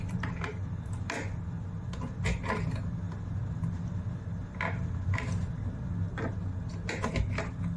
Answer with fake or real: real